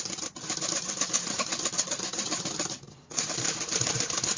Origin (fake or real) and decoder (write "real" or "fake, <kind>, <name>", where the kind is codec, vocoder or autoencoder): real